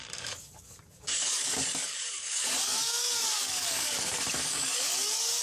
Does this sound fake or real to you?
fake